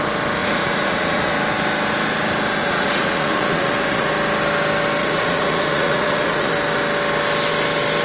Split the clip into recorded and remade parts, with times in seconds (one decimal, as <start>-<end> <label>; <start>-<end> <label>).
0.0-0.4 recorded; 0.4-1.3 remade; 1.3-2.6 recorded; 2.6-4.1 remade; 4.1-5.0 recorded; 5.0-6.5 remade; 6.5-8.0 recorded

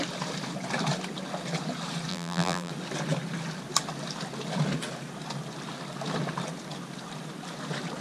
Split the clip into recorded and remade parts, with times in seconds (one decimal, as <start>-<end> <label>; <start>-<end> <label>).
0.0-2.1 recorded; 2.1-2.7 remade; 2.7-8.0 recorded